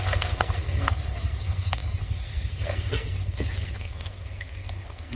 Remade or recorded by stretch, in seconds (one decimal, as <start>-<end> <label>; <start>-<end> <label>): 0.0-5.2 remade